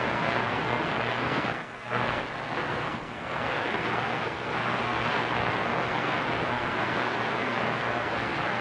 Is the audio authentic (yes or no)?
no